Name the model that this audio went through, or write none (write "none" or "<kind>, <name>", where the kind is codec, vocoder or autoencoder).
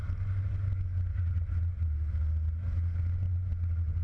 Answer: none